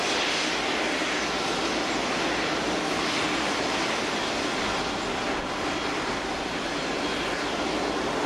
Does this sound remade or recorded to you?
recorded